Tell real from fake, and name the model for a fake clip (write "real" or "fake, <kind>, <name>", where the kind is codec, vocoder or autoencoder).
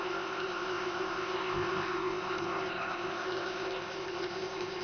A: fake, codec, ZipCodec